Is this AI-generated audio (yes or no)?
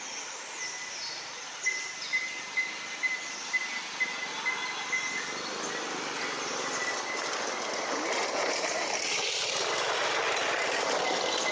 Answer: no